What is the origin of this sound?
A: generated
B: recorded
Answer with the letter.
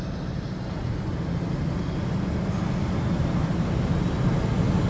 B